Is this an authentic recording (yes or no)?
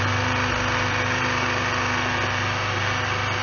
yes